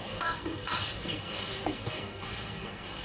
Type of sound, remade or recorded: remade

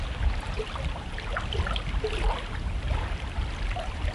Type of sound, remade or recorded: recorded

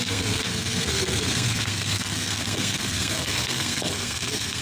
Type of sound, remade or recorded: remade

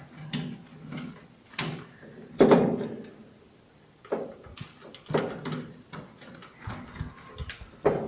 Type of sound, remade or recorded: recorded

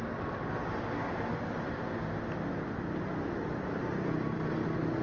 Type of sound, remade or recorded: recorded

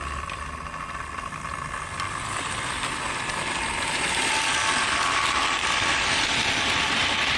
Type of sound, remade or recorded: recorded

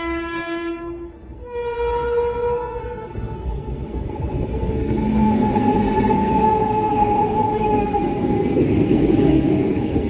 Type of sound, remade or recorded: remade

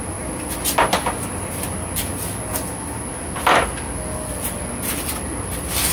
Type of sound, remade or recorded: recorded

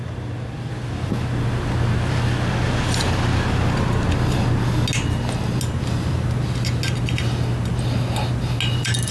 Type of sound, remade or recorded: recorded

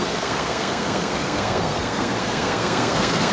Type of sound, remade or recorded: remade